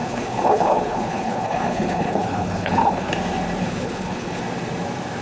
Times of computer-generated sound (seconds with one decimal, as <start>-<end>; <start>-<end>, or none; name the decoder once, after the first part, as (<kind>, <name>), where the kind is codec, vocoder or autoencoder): 0.0-3.1 (codec, HILCodec); 3.6-4.4